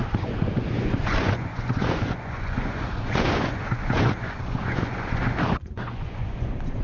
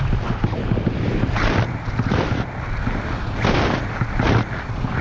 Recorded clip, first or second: second